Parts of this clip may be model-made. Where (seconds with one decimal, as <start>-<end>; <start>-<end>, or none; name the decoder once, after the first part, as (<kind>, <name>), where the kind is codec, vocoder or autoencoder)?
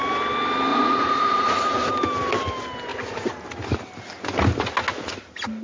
0.7-1.9 (vocoder, Vocos); 2.9-3.4